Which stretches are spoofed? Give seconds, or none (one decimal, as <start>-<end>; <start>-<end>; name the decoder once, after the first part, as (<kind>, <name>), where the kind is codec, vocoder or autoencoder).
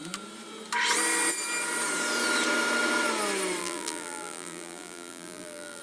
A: 3.6-5.8 (vocoder, BigVGAN v2)